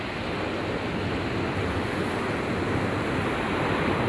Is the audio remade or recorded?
recorded